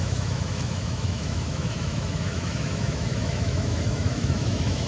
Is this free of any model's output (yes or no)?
no